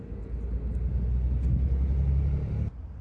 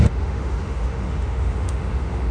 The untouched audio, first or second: first